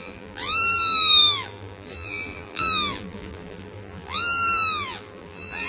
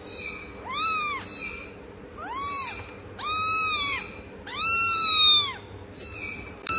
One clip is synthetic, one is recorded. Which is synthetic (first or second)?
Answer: first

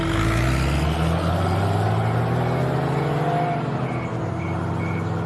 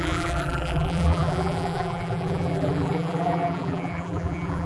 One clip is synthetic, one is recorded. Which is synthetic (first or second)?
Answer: second